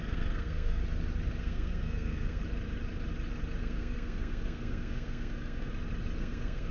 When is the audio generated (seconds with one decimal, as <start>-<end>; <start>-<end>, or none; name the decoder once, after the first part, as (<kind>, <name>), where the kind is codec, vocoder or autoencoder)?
0.0-0.8 (codec, SNAC); 1.4-2.4; 3.6-5.7; 6.2-6.7